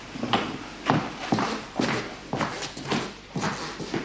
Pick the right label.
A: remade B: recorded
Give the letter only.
B